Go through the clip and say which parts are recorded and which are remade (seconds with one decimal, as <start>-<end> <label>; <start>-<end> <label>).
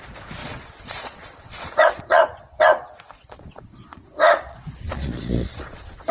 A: 0.0-6.1 remade